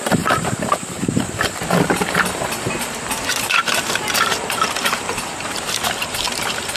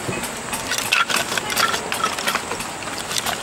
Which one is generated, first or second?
first